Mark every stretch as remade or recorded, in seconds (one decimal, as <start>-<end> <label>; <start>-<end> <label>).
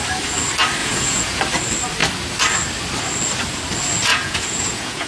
0.0-0.8 recorded; 0.8-1.4 remade; 1.4-4.1 recorded; 4.1-5.1 remade